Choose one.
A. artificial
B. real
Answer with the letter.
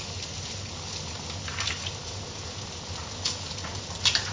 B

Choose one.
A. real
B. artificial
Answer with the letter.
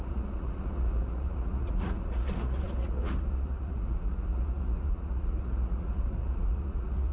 B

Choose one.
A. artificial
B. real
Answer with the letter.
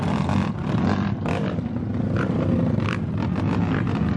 B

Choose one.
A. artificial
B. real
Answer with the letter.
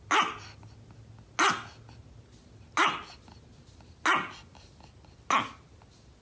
B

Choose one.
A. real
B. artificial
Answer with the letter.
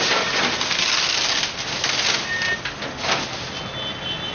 A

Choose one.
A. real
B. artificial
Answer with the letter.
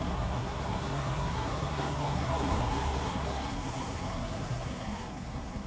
B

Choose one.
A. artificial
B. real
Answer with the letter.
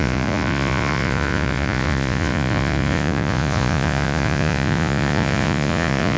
A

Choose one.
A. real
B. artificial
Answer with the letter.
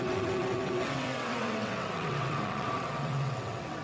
B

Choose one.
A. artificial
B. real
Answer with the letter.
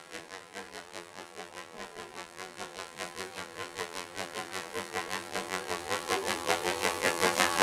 A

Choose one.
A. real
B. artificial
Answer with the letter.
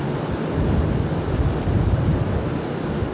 A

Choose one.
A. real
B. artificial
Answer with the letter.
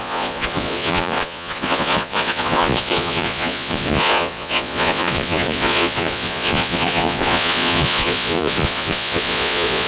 B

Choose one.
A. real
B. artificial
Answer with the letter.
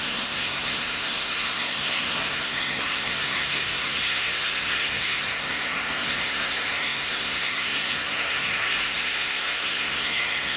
B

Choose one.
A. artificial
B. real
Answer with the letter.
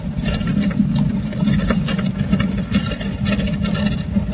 B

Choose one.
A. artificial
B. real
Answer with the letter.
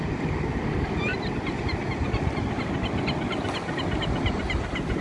B